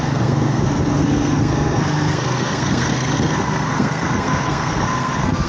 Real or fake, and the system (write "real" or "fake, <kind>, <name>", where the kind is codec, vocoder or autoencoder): fake, codec, SNAC